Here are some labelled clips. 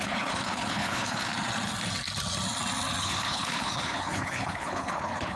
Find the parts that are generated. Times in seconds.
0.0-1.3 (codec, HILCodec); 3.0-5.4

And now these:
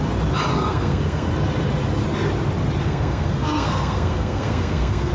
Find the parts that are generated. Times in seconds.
0.5-1.3 (codec, SNAC); 2.8-5.1

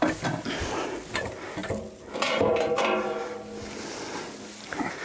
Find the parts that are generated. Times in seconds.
none

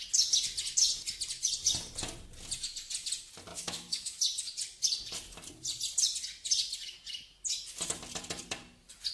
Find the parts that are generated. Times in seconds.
3.5-4.2 (autoencoder, DAC-VAE)